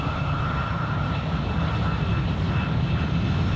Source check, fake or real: real